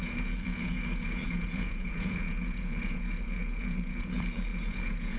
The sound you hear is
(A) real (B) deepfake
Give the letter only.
B